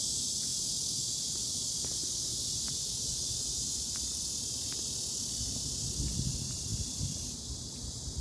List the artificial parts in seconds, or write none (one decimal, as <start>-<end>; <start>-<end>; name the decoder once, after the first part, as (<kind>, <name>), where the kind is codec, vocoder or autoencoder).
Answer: 0.5-1.0 (vocoder, BigVGAN v2); 6.7-8.2